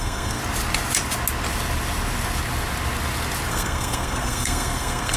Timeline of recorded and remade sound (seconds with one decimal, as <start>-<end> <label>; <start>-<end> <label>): 0.0-0.4 remade; 0.4-3.5 recorded; 3.5-5.2 remade